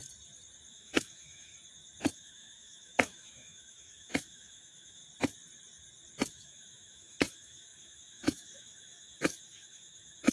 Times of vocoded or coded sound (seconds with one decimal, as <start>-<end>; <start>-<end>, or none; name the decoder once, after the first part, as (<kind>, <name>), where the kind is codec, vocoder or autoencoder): 0.7-1.5 (autoencoder, DAC-VAE); 2.1-5.0; 6.3-10.3